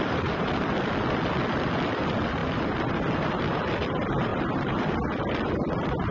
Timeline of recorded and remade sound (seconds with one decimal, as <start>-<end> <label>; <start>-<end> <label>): 0.0-6.1 recorded